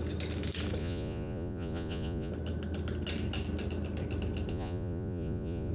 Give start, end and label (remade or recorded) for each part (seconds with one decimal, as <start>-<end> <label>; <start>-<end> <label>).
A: 0.0-0.8 recorded; 0.8-2.3 remade; 2.3-4.5 recorded; 4.5-5.7 remade